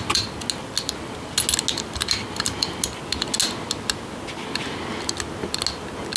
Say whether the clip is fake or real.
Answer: real